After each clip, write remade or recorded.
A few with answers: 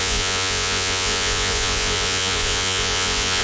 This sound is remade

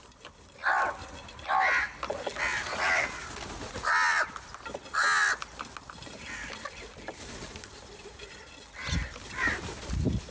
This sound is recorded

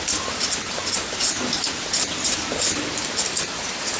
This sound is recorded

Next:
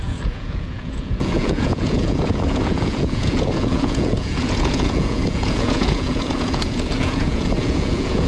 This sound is remade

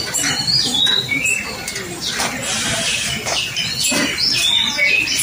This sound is recorded